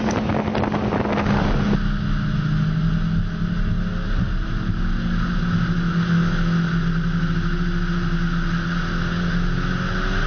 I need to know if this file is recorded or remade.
recorded